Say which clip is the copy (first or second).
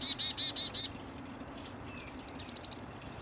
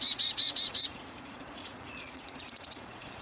second